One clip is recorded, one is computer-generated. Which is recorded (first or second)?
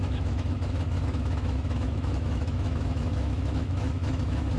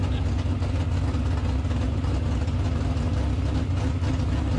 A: second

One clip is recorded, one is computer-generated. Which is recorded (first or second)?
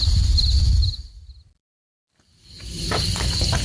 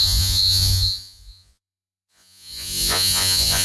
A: first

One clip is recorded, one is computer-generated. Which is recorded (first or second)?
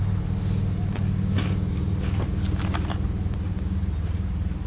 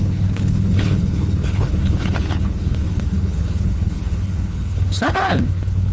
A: first